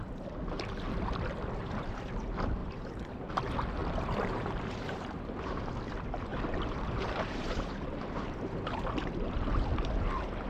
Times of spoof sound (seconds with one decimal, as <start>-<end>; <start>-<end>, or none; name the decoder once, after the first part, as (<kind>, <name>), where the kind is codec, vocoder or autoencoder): 2.6-3.3 (vocoder, BigVGAN v2); 3.8-5.7; 6.3-9.9